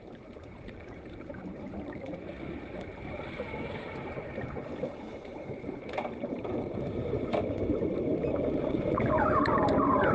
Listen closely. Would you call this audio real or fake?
fake